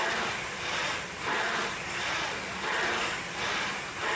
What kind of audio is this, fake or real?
real